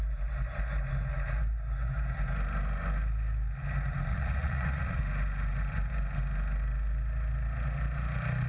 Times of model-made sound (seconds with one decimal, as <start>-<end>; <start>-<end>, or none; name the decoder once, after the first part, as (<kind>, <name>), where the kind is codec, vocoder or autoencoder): 4.1-5.0 (vocoder, Vocos)